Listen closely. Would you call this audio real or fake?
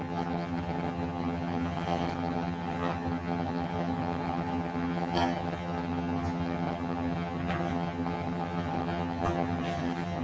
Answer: fake